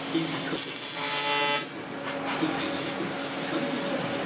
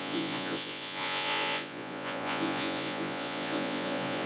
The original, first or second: first